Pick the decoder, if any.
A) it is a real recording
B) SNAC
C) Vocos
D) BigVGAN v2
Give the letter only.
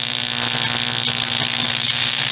A